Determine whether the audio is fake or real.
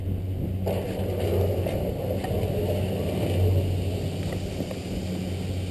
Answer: real